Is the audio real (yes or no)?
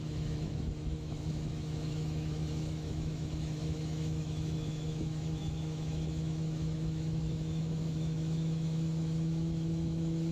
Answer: no